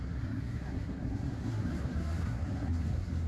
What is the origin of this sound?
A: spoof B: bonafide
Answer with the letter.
A